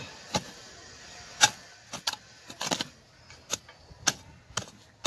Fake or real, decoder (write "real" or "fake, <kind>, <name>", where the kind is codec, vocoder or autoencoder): real